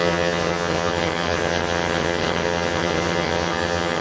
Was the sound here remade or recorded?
remade